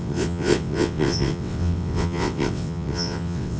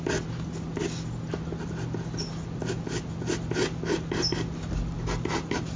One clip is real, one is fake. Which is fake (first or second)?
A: first